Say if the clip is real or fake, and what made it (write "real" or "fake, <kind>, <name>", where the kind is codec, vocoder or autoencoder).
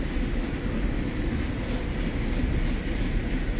real